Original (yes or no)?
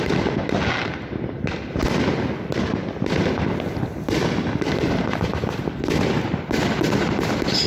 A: yes